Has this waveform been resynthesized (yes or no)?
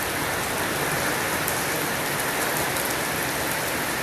no